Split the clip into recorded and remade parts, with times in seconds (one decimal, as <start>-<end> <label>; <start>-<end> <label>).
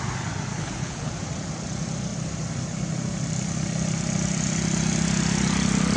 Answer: 0.0-0.5 recorded; 0.5-1.1 remade; 1.1-6.0 recorded